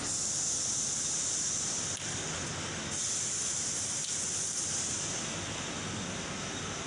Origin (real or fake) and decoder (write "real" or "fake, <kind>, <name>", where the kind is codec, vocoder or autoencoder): real